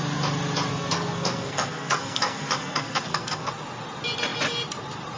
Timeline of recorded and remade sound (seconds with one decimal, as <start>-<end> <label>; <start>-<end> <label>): 0.0-0.7 recorded; 0.7-3.5 remade; 3.5-5.2 recorded